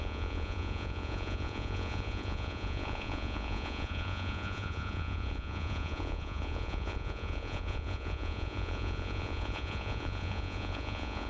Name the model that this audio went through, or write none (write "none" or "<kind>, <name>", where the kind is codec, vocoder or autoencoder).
vocoder, Vocos